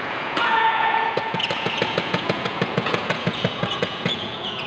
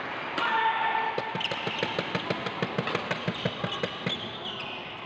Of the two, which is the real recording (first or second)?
second